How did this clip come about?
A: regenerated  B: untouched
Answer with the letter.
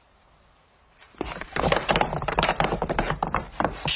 A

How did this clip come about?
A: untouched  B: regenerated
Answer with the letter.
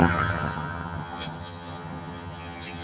B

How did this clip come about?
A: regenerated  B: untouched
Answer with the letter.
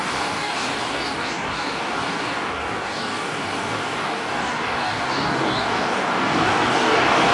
A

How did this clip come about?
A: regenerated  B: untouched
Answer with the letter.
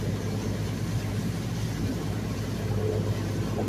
B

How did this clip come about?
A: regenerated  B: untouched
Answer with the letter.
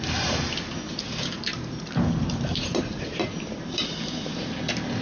A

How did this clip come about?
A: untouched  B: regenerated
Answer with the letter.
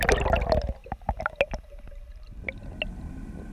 A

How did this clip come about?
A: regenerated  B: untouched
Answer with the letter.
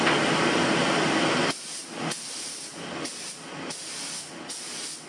B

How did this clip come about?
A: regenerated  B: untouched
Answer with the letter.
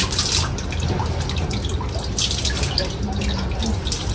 B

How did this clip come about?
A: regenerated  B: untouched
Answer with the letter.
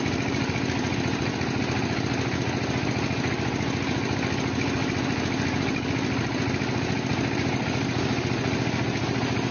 B